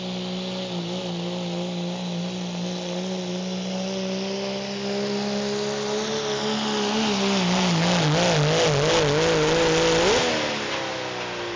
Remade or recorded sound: recorded